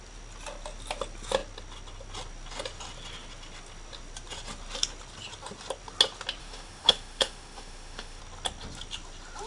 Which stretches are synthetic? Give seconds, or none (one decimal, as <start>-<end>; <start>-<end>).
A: 6.4-8.2